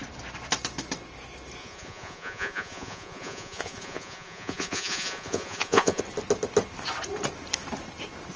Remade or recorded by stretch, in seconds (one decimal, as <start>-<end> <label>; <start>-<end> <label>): 0.0-1.6 recorded; 1.6-6.0 remade; 6.0-8.4 recorded